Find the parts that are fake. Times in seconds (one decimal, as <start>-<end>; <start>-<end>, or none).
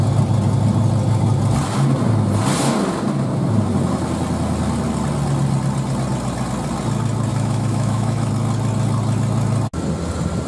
7.3-8.3